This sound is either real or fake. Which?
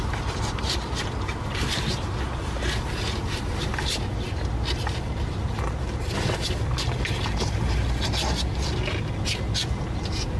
real